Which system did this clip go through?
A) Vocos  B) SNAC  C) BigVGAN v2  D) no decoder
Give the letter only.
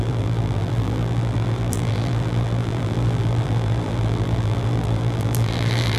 C